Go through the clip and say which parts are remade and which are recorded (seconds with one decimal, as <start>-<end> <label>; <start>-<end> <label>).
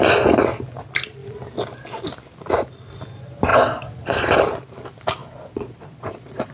0.0-5.2 recorded; 5.2-6.5 remade